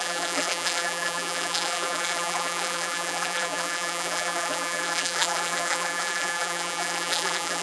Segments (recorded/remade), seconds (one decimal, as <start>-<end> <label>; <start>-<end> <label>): 0.0-7.6 remade